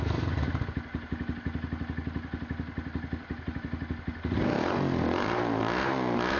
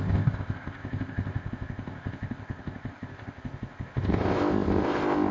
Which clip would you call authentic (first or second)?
first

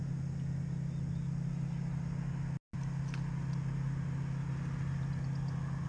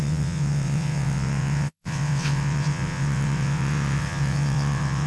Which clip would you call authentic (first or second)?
first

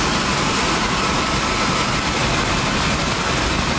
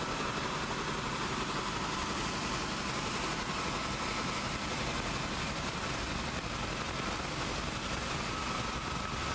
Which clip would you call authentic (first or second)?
second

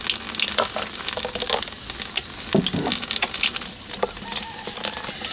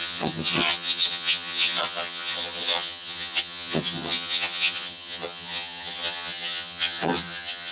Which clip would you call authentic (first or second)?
first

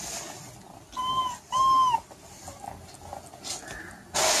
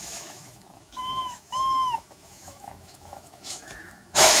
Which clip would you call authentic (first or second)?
first